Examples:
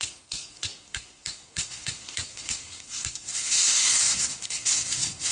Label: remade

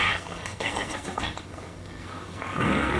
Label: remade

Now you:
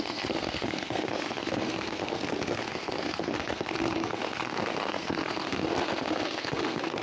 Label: remade